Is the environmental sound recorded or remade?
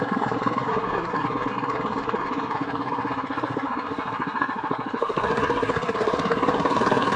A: remade